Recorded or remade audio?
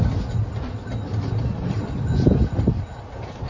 recorded